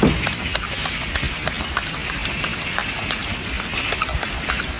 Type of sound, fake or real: real